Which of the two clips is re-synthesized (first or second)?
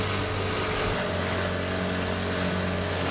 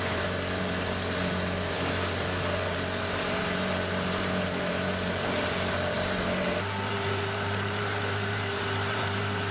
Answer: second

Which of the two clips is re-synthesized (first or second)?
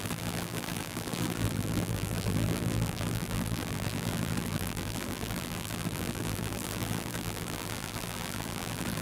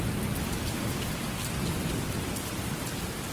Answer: first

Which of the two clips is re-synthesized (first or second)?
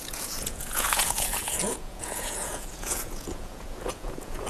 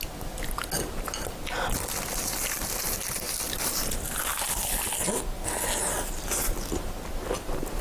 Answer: first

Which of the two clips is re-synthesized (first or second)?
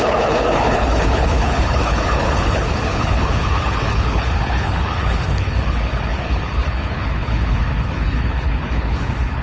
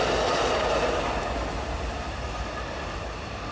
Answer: first